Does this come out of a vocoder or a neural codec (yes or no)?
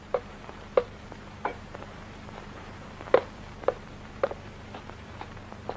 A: yes